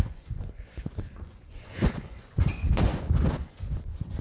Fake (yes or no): yes